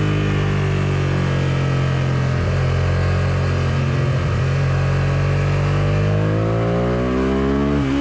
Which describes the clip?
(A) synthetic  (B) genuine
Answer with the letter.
B